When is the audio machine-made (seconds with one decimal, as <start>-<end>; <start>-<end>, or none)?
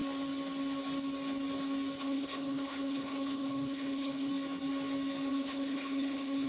2.0-4.3; 5.3-6.5